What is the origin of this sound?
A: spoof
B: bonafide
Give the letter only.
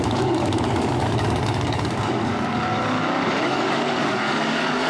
A